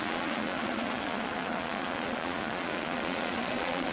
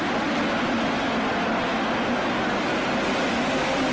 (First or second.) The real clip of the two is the second